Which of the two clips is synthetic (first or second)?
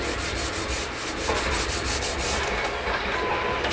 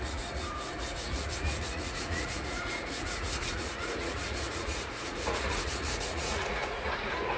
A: second